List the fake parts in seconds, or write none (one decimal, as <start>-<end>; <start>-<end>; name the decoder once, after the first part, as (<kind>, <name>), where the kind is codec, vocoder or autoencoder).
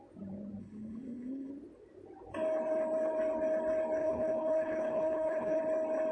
0.6-1.5 (codec, HILCodec); 4.0-5.6